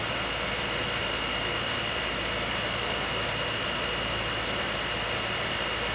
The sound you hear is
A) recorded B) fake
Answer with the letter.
A